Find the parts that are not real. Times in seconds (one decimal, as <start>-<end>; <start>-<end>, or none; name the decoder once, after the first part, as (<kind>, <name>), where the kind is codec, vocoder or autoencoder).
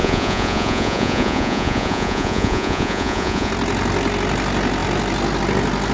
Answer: 0.0-3.5 (vocoder, Vocos)